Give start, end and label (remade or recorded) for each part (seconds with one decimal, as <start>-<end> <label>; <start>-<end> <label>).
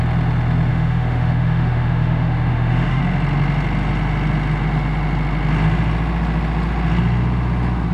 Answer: 0.0-0.7 recorded; 0.7-3.0 remade; 3.0-7.9 recorded